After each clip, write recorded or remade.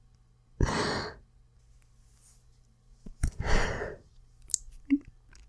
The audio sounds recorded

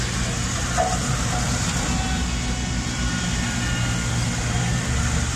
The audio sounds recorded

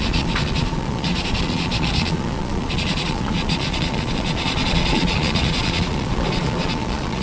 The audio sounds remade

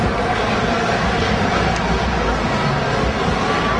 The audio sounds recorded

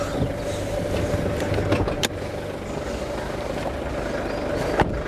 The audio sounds recorded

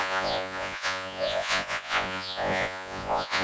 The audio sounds remade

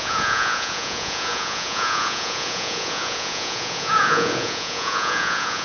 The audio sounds remade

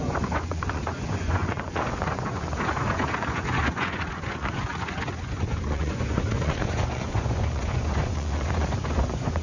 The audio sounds remade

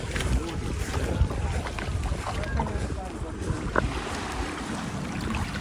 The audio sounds recorded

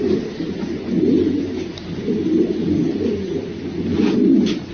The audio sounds recorded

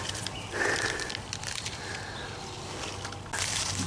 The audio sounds recorded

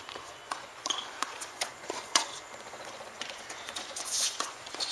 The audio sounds remade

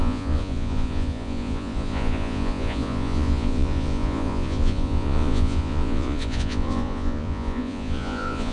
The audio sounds remade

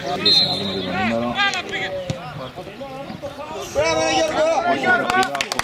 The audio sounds recorded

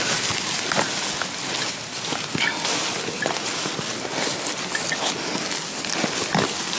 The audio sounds recorded